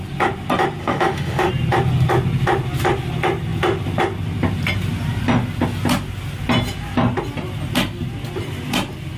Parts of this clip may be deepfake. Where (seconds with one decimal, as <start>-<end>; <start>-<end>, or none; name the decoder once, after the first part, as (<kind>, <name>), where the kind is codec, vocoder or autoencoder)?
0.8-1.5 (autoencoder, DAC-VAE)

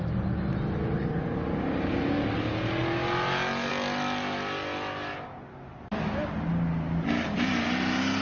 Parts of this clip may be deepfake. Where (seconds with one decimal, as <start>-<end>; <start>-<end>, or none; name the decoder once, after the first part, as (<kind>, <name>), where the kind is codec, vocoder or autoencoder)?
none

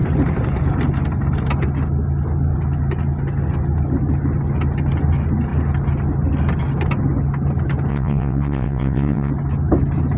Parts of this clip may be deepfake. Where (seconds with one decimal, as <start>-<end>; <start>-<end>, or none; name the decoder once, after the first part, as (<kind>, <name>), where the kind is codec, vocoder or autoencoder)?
7.9-9.3 (vocoder, WaveNeXt)